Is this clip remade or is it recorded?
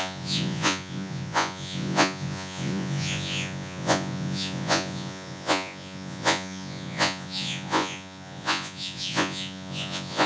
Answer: remade